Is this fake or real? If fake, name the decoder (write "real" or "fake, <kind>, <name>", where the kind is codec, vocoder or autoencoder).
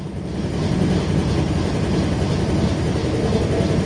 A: real